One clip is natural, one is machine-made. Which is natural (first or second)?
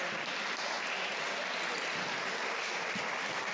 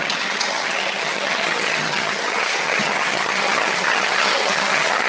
first